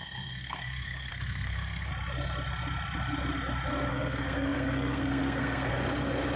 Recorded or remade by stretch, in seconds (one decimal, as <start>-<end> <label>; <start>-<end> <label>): 0.0-1.9 remade; 1.9-3.9 recorded; 3.9-5.7 remade; 5.7-6.4 recorded